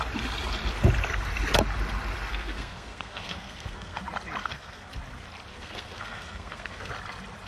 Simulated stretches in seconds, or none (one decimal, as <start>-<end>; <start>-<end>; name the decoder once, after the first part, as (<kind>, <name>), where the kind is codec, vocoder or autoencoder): 2.3-4.0 (codec, SNAC); 4.4-4.9; 5.5-6.9